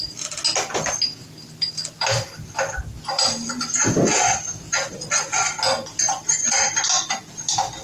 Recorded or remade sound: recorded